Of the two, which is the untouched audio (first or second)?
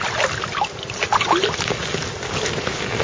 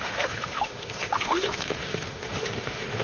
first